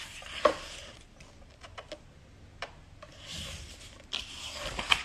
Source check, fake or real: real